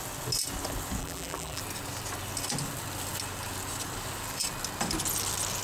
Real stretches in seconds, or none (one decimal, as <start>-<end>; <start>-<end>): 0.0-1.0; 1.6-5.6